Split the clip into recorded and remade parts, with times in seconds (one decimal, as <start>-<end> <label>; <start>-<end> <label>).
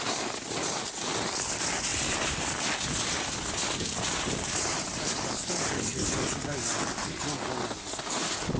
0.0-8.6 recorded